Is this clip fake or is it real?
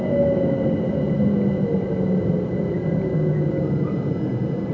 real